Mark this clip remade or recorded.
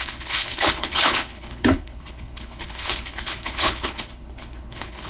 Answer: remade